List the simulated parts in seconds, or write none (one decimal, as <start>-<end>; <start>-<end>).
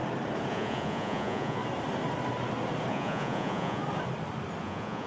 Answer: 0.5-1.6; 2.9-3.8; 4.6-5.1